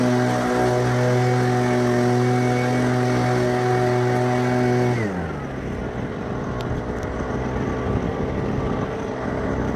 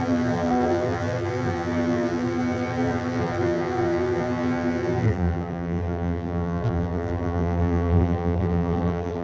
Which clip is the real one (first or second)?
first